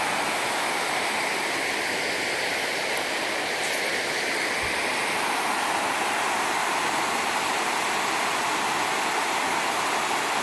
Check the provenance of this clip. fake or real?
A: real